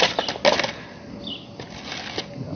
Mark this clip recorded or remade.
recorded